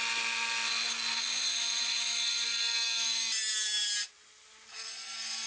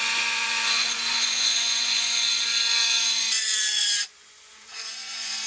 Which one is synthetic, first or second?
second